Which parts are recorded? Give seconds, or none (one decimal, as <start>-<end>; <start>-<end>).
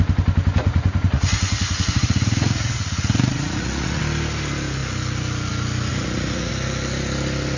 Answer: 0.0-0.6; 4.0-5.9; 6.5-7.6